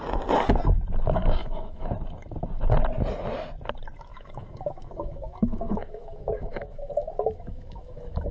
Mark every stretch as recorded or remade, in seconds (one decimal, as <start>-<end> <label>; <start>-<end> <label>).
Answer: 0.0-1.4 recorded; 1.4-1.9 remade; 1.9-4.1 recorded; 4.1-8.3 remade